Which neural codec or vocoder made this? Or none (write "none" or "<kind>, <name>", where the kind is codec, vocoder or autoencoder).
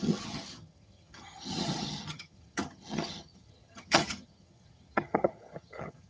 vocoder, HiFi-GAN